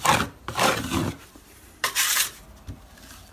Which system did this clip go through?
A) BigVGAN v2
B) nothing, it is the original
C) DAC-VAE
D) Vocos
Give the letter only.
B